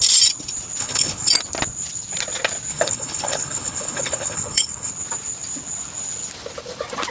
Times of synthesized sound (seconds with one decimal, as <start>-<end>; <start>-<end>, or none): 0.8-1.3; 2.7-4.9